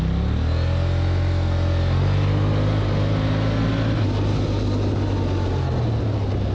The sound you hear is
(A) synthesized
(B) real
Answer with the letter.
B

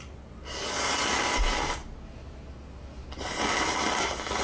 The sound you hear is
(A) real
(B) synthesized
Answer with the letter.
A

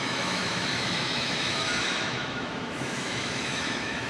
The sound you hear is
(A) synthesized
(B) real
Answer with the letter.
A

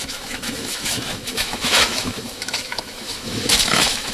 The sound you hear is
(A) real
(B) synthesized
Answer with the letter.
B